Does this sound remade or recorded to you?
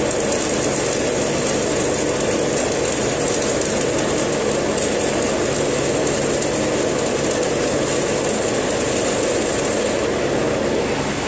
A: recorded